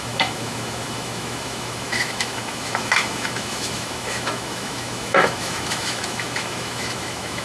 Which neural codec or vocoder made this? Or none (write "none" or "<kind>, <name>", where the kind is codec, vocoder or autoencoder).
autoencoder, DAC-VAE